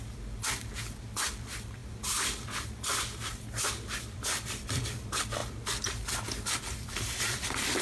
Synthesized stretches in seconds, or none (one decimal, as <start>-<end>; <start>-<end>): 0.0-7.8